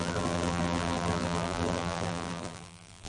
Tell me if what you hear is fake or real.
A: fake